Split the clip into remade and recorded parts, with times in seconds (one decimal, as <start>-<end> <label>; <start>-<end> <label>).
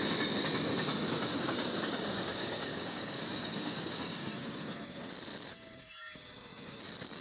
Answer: 0.0-1.3 recorded; 1.3-5.1 remade; 5.1-5.5 recorded; 5.5-6.8 remade; 6.8-7.2 recorded